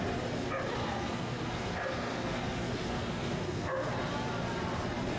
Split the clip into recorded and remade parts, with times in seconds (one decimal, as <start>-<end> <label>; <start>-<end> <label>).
0.0-0.8 recorded; 0.8-3.9 remade; 3.9-5.2 recorded